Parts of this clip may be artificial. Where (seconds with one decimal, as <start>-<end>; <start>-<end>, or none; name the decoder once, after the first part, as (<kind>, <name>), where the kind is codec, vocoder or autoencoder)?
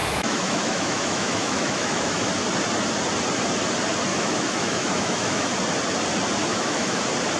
0.0-2.3 (autoencoder, DAC-VAE); 4.1-5.5; 6.5-7.0